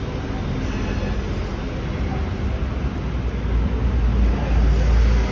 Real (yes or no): yes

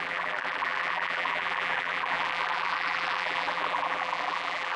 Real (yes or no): no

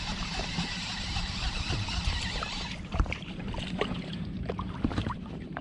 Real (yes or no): no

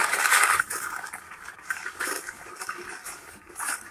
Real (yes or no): no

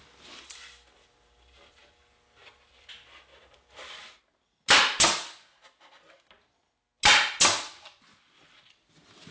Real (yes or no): yes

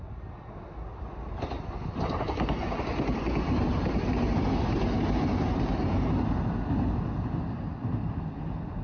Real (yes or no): yes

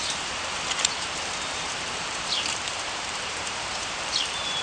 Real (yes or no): no